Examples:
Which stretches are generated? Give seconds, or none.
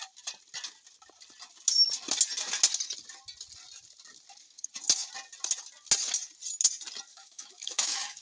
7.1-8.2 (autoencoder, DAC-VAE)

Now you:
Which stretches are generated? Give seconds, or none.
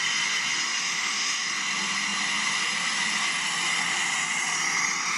0.8-1.5 (autoencoder, DAC-VAE)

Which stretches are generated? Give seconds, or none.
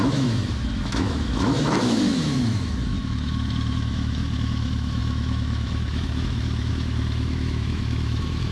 0.0-8.5 (autoencoder, DAC-VAE)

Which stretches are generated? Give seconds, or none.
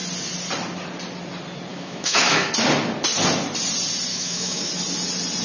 1.7-2.5 (autoencoder, DAC-VAE); 4.1-4.7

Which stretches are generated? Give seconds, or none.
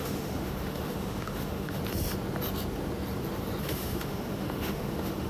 0.0-1.8 (autoencoder, DAC-VAE); 3.6-5.3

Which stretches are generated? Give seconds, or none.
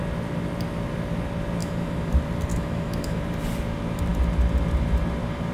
1.6-2.1 (autoencoder, DAC-VAE); 2.5-3.2